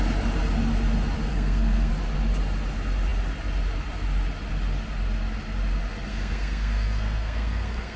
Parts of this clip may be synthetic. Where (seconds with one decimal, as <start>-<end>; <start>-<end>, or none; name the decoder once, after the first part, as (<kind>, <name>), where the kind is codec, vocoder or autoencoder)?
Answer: 1.3-1.9 (codec, SNAC); 6.1-8.0